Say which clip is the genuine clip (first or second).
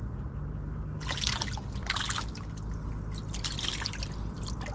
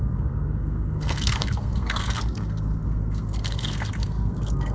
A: first